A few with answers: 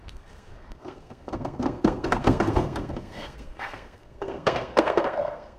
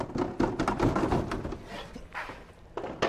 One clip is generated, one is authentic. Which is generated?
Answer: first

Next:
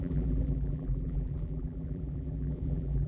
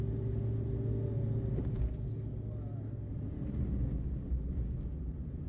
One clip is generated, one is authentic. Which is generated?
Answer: first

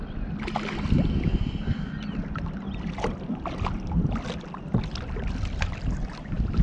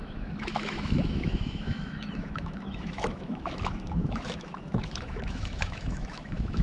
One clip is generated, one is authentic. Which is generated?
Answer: second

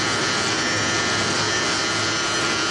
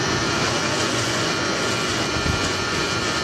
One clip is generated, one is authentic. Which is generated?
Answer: second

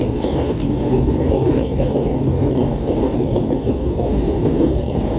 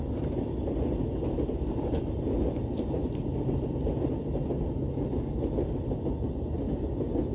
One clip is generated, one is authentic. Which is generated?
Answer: first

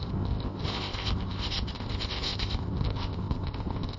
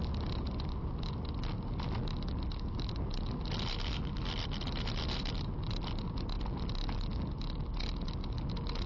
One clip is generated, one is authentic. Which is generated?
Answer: first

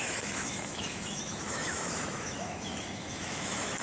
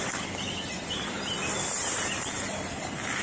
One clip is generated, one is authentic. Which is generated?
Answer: first